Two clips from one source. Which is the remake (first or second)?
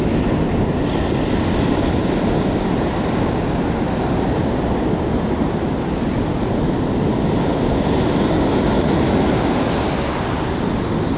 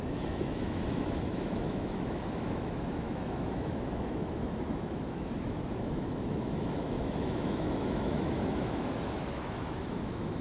second